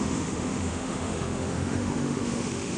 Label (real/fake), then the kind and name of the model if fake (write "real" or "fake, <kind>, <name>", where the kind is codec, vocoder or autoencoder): fake, autoencoder, DAC-VAE